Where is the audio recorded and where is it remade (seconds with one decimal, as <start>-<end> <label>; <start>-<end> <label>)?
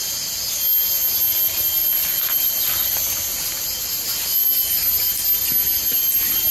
0.0-1.8 recorded; 1.8-2.6 remade; 2.6-6.5 recorded